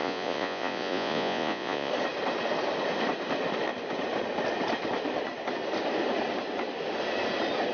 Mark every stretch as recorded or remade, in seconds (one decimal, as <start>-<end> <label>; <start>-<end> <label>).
0.0-1.9 remade; 1.9-7.7 recorded